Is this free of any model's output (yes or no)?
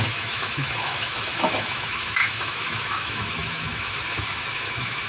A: no